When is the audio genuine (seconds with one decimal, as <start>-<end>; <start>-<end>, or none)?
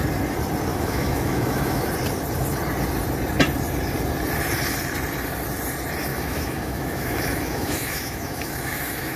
0.0-0.7; 1.9-6.1